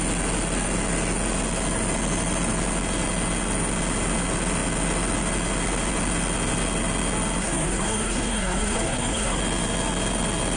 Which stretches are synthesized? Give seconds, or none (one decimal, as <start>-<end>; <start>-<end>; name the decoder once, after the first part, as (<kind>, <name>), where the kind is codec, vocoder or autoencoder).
7.4-9.4 (codec, SNAC)